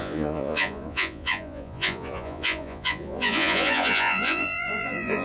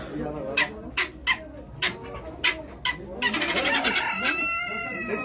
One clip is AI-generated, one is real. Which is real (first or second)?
second